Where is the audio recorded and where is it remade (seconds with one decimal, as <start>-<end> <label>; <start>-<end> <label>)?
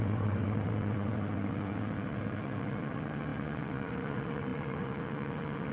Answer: 0.0-5.7 remade